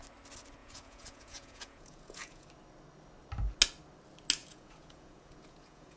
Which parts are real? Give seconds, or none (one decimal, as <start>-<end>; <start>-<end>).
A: 0.0-0.6; 2.5-4.4

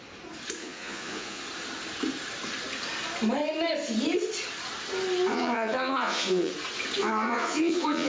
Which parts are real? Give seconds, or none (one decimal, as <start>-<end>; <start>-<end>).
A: 0.0-0.6; 1.4-5.3; 6.5-7.0

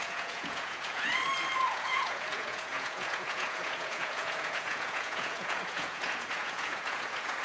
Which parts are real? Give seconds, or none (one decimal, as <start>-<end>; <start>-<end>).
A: 1.1-1.7

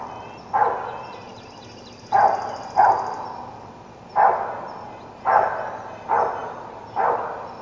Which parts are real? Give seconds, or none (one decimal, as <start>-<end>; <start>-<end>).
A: 0.0-7.6

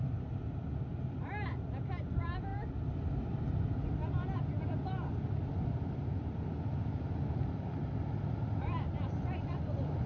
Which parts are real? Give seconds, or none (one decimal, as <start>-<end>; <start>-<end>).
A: 0.0-10.1

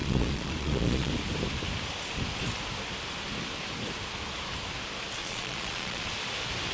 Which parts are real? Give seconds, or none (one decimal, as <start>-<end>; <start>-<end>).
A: 1.1-5.2; 6.1-6.7